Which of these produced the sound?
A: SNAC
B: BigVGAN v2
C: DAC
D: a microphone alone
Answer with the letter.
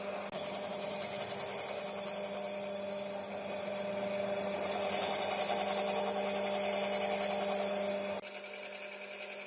D